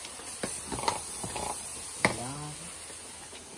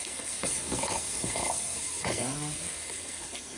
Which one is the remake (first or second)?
second